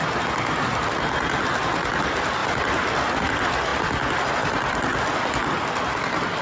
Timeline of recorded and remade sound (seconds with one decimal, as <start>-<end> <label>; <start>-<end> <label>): 0.0-6.4 recorded